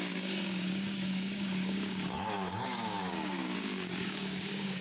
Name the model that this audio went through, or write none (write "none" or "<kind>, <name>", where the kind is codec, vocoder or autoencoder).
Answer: codec, DAC